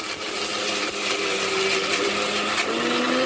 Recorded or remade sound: recorded